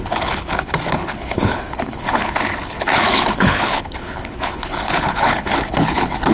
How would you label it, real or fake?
fake